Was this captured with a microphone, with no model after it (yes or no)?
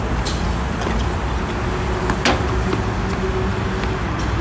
yes